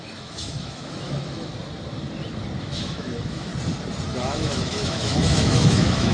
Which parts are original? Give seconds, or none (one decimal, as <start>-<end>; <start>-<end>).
1.5-2.6; 3.5-4.2